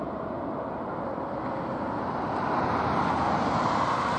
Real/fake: real